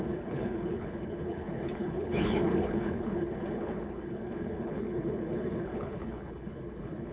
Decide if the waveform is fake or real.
fake